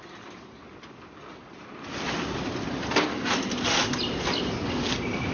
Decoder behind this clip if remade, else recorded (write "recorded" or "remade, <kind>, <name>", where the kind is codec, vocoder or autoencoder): recorded